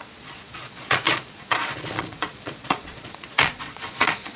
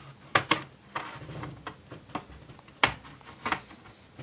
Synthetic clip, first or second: first